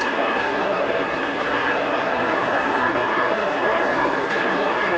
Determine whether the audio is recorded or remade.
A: remade